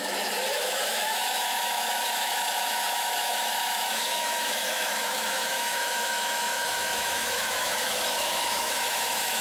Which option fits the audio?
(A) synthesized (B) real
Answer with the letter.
A